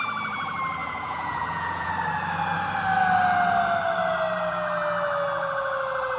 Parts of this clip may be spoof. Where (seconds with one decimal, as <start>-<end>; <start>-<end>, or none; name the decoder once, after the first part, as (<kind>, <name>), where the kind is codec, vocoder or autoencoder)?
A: 0.8-1.9 (vocoder, Vocos)